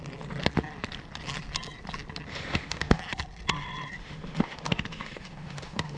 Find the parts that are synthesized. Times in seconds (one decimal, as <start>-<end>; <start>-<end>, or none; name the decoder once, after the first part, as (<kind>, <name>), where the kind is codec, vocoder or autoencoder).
2.3-3.0 (autoencoder, DAC-VAE); 4.0-6.0